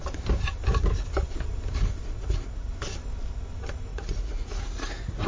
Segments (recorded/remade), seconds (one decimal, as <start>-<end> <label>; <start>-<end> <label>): 0.0-2.0 recorded; 2.0-2.7 remade; 2.7-3.9 recorded; 3.9-5.3 remade